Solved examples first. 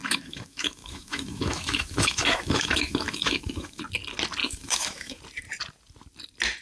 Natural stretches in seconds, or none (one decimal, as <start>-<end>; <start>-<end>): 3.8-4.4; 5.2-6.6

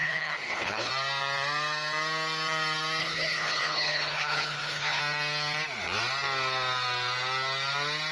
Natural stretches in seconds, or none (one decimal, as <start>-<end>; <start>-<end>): 0.9-3.0; 5.0-8.1

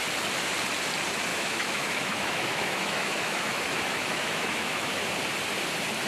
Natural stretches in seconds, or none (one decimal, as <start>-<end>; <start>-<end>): 0.0-1.3; 5.0-6.1